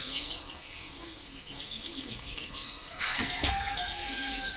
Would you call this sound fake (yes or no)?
yes